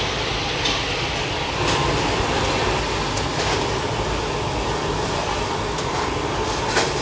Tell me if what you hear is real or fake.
real